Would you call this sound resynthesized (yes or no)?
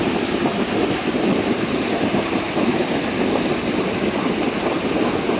no